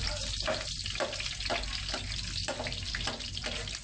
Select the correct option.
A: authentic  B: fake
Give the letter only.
A